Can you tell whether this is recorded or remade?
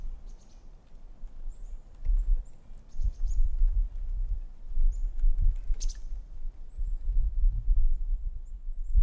remade